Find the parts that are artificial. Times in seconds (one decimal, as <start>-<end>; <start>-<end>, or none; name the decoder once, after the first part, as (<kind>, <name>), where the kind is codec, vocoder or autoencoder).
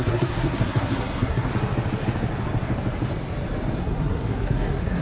0.0-1.5 (codec, SNAC); 3.8-5.0